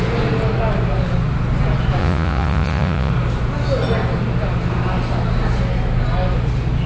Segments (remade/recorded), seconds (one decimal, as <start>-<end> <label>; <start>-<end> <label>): 0.0-2.0 recorded; 2.0-3.1 remade; 3.1-6.9 recorded